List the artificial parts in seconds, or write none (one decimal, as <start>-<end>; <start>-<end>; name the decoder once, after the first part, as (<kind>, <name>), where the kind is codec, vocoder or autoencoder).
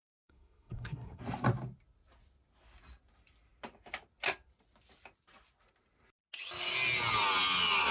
0.0-1.2 (codec, SNAC)